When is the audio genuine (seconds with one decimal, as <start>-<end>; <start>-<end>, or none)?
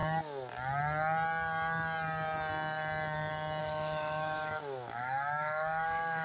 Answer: 0.0-3.6